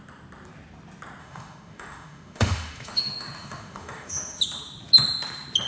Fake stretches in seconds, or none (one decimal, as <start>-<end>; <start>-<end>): 1.2-4.4